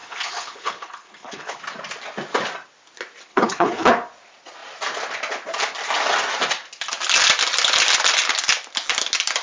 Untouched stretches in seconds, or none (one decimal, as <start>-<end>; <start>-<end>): 1.6-3.3; 3.9-9.4